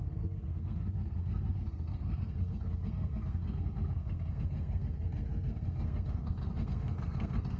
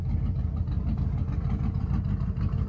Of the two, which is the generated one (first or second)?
first